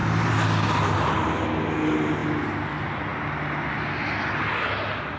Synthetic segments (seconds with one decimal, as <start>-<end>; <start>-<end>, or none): none